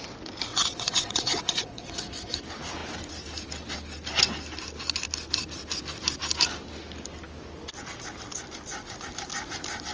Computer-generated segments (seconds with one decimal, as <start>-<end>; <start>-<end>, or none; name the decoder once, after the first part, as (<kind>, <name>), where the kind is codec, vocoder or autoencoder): 0.5-2.4 (vocoder, WaveNeXt)

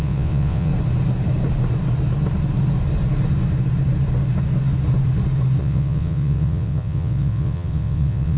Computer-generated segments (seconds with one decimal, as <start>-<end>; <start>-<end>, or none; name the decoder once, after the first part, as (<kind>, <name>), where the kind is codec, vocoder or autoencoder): 0.0-0.7 (vocoder, WaveNeXt); 5.6-8.4

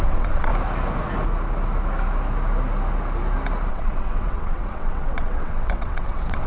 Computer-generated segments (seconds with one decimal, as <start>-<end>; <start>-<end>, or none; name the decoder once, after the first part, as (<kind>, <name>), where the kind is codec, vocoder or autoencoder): 0.0-0.5 (vocoder, WaveNeXt); 3.7-6.5

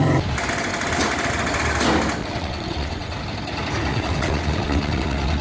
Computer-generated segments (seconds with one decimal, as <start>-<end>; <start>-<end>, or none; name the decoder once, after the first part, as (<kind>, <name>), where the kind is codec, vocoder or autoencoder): 2.2-3.2 (vocoder, WaveNeXt); 3.9-5.4

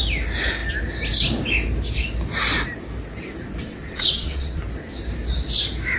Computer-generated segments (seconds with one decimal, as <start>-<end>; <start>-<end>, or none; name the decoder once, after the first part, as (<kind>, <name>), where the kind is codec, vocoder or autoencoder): 3.7-4.6 (vocoder, WaveNeXt)

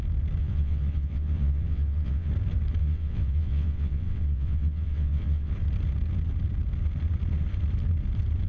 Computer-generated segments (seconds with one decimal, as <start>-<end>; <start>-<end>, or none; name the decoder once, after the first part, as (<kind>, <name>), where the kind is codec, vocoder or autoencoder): 0.4-2.3 (vocoder, WaveNeXt); 2.8-5.5

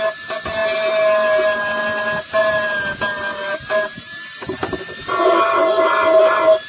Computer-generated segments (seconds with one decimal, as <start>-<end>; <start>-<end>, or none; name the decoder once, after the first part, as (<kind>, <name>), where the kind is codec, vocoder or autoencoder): none

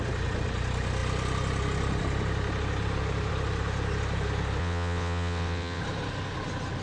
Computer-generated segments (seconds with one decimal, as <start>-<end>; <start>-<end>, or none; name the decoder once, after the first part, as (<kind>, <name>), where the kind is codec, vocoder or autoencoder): 4.6-5.8 (vocoder, WaveNeXt)